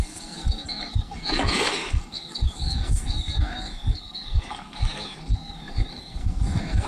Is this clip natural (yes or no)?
no